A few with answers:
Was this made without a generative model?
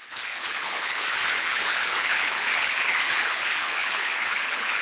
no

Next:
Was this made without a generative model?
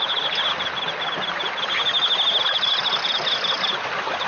yes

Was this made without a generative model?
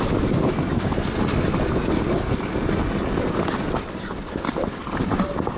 yes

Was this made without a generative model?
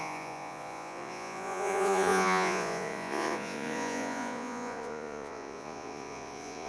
no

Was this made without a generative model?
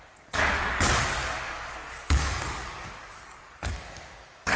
no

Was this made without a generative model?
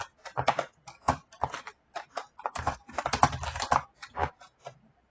yes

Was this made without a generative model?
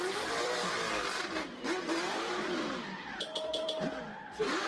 no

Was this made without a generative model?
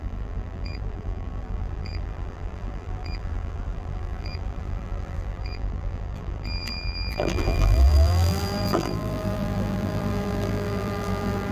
no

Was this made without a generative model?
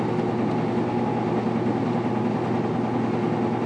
yes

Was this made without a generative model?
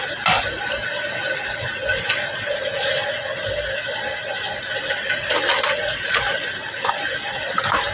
yes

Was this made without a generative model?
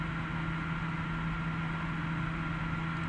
yes